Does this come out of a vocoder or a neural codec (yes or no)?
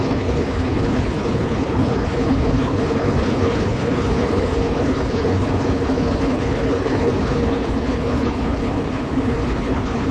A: yes